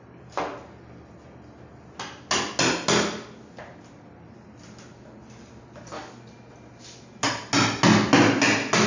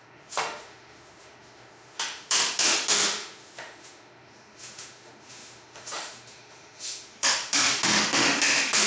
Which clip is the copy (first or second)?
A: second